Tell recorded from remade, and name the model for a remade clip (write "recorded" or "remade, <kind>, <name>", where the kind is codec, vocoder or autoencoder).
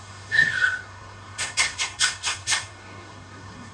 remade, codec, SNAC